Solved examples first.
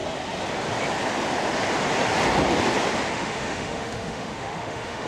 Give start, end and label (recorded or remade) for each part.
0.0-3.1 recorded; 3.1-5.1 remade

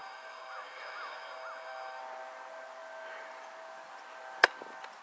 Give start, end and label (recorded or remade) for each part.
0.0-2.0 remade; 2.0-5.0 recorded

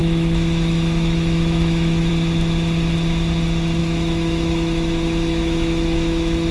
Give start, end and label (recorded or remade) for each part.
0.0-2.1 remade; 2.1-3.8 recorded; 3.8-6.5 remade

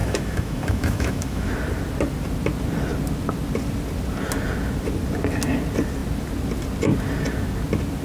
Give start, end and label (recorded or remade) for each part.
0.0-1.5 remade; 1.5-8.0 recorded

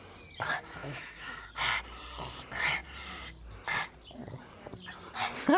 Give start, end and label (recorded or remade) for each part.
0.0-0.8 recorded; 0.8-1.4 remade; 1.4-5.6 recorded

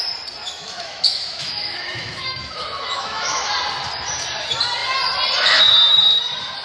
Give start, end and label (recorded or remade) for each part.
0.0-0.4 recorded; 0.4-3.5 remade; 3.5-6.6 recorded